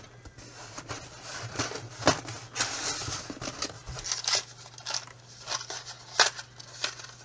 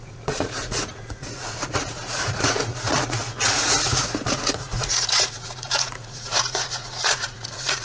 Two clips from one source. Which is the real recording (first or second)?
first